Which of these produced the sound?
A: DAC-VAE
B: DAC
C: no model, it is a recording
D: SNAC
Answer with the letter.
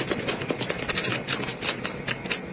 C